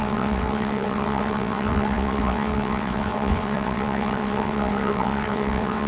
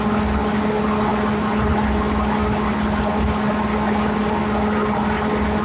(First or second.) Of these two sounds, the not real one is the first